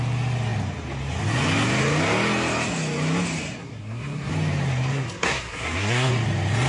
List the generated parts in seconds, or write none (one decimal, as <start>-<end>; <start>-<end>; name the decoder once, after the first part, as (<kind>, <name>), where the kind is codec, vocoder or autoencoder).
3.6-4.3 (codec, SNAC); 4.9-6.1